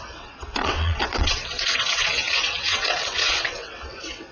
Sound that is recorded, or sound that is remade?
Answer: remade